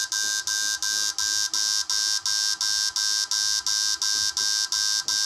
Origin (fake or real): real